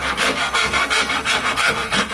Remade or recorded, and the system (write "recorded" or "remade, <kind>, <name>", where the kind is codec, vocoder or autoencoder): remade, codec, SNAC